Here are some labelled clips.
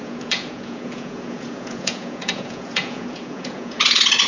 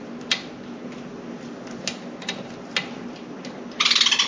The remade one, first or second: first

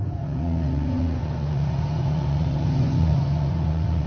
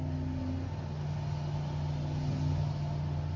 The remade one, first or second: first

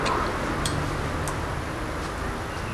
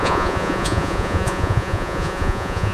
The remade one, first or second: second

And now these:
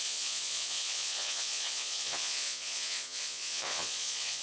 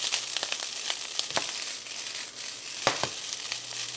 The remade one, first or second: first